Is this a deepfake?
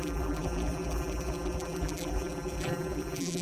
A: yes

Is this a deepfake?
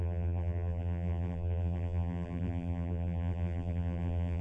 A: yes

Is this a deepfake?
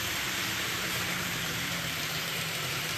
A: yes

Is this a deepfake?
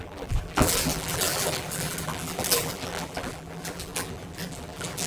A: yes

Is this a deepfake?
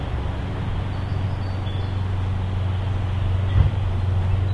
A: no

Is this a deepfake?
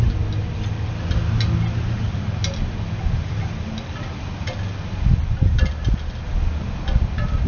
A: no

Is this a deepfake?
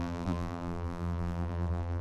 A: yes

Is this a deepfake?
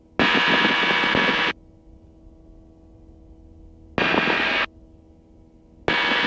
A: no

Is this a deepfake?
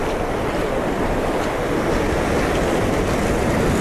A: no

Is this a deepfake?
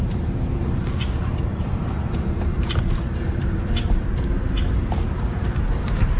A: yes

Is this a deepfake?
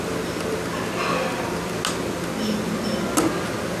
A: no